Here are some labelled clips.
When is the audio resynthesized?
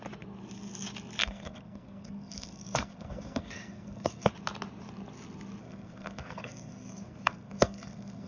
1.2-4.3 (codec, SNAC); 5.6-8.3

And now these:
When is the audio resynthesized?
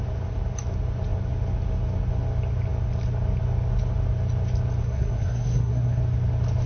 4.8-6.0 (codec, SNAC)